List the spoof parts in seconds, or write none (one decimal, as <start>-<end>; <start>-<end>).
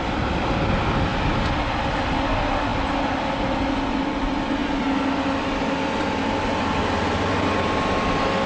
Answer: none